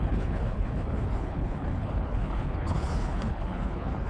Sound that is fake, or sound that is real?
fake